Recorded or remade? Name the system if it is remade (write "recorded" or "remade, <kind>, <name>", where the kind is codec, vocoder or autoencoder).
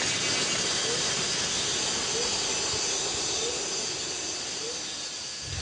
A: recorded